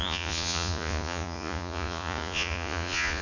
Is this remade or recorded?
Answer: remade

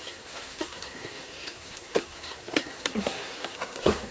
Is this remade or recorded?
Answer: remade